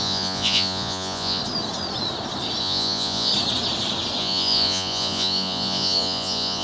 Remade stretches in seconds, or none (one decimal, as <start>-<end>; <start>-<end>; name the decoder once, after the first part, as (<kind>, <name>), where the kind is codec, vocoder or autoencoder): 0.0-1.4 (vocoder, Vocos); 2.6-3.3; 4.2-6.6